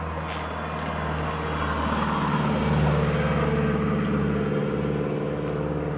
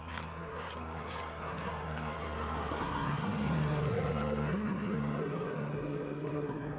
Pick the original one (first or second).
first